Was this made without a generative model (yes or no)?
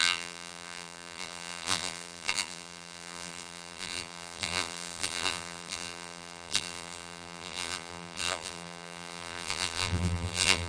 no